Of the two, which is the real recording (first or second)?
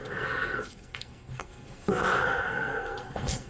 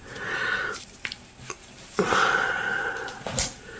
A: second